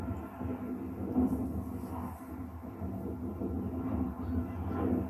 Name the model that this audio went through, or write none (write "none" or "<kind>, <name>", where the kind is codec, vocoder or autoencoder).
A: none